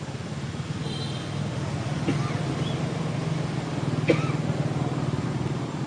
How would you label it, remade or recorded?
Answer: recorded